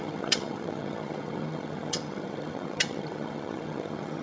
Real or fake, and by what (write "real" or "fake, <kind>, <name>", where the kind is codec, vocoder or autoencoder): fake, vocoder, HiFi-GAN